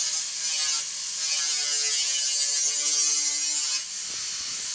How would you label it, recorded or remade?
recorded